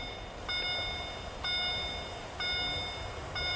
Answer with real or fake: real